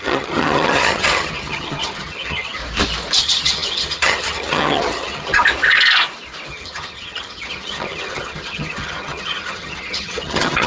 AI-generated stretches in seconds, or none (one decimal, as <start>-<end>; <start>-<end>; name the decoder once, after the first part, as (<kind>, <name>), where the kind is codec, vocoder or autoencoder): 0.0-2.6 (vocoder, HiFi-GAN); 3.2-5.4; 6.5-10.7